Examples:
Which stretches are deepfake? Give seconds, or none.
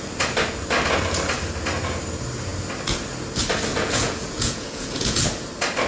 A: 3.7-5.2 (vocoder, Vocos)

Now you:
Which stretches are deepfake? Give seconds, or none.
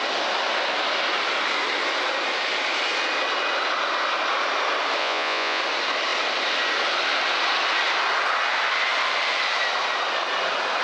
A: 5.0-5.6 (vocoder, Vocos)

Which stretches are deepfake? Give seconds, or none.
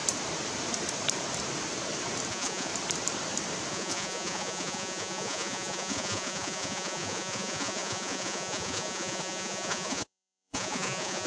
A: 2.3-2.7 (vocoder, Vocos); 3.7-11.3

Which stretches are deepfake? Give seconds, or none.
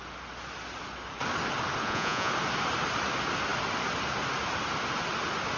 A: 1.8-2.3 (vocoder, Vocos)